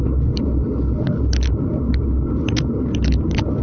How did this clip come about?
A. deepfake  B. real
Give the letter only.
B